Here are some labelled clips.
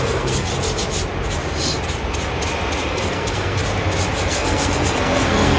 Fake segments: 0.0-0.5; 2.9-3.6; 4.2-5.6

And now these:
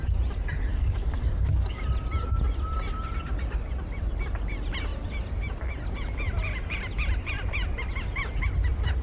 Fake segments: 0.7-1.8

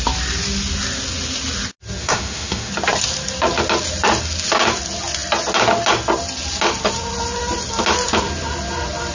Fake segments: 2.0-2.7

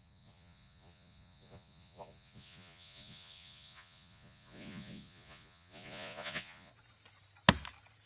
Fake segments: 0.0-6.7

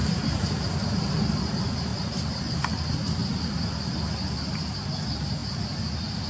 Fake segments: 0.0-1.1; 1.9-2.4